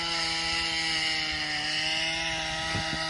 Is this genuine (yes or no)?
yes